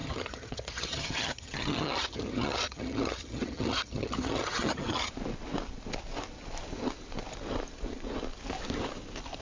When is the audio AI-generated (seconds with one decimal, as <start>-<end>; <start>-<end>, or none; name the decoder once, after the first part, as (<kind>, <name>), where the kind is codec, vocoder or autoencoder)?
0.0-5.1 (vocoder, HiFi-GAN)